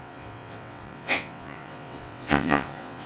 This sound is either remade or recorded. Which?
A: remade